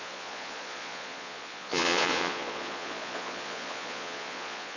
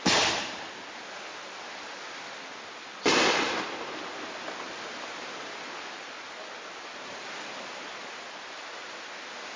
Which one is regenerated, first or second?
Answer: first